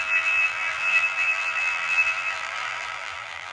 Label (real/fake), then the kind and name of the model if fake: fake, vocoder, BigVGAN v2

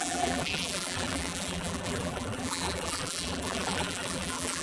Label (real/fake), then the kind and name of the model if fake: fake, vocoder, BigVGAN v2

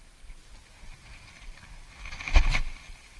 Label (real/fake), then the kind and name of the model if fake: real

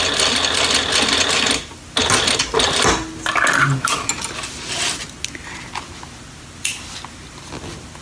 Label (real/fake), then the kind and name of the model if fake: real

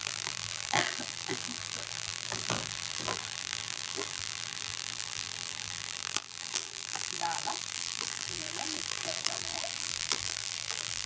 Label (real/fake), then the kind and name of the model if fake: fake, vocoder, BigVGAN v2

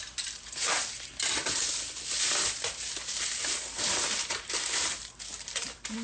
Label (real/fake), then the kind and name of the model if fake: fake, vocoder, BigVGAN v2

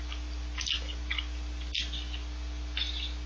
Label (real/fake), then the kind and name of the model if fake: real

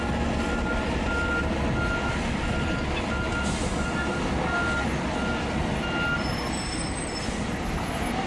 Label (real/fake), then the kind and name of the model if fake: real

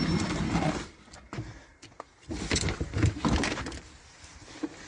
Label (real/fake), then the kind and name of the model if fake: fake, vocoder, BigVGAN v2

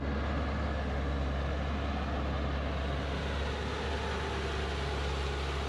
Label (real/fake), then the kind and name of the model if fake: real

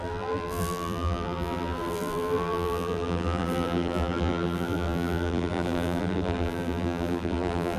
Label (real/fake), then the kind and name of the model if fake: fake, vocoder, BigVGAN v2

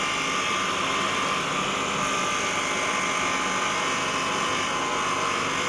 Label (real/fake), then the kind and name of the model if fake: real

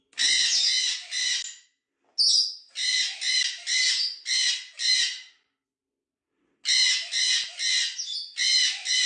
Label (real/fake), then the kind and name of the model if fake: real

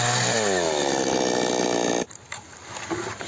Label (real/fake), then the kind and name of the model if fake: real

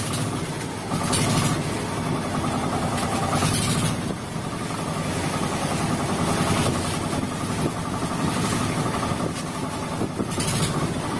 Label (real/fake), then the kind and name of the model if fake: real